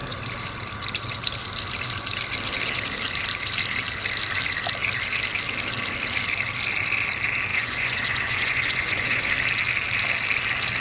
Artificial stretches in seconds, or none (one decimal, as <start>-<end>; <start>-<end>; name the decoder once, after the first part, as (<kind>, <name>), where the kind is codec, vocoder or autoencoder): 7.5-9.3 (vocoder, Vocos)